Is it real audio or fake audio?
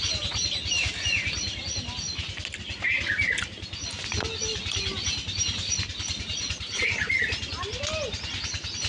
real